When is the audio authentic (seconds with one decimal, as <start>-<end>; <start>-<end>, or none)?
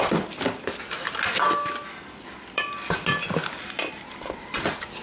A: 0.0-1.8; 2.6-5.0